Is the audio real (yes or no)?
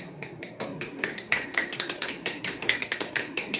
no